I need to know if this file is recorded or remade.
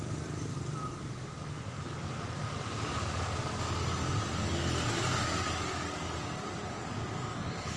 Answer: recorded